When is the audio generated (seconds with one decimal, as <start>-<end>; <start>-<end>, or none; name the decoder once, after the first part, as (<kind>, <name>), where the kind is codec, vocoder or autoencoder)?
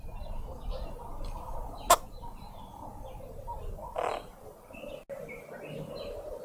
2.7-5.0 (vocoder, BigVGAN v2)